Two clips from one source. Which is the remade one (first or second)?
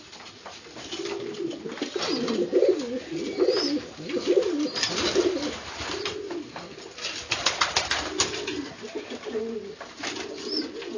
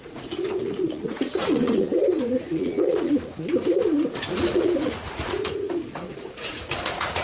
second